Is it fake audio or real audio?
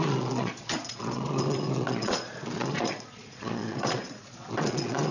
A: fake